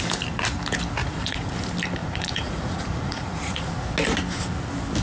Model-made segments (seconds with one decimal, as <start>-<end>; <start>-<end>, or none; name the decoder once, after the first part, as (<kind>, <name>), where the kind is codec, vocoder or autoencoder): 1.0-1.5 (vocoder, Vocos); 2.0-3.7